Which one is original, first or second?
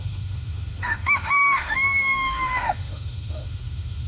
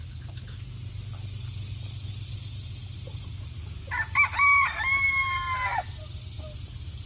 second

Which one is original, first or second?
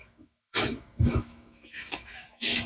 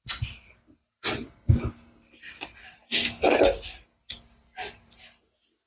second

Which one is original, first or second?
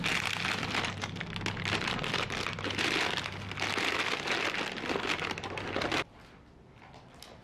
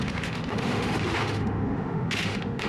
first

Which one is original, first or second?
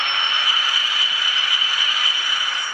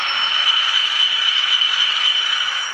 first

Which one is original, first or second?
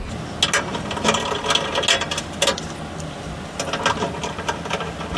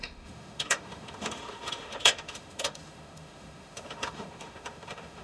first